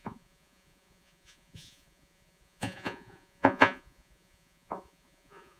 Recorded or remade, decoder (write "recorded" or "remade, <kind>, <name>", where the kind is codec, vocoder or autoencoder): remade, vocoder, Vocos